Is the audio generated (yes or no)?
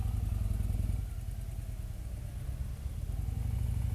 no